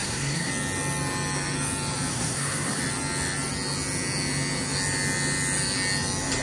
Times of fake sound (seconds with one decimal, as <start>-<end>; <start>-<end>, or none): 0.0-0.5; 2.1-2.8